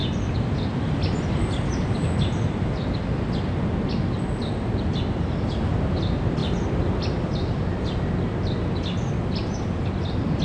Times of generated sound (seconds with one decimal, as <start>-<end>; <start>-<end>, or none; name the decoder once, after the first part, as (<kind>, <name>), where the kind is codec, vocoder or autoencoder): none